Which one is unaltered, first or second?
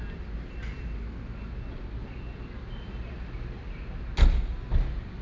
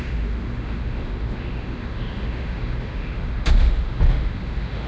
first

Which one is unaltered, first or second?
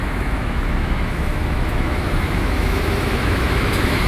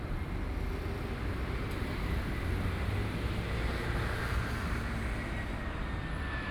second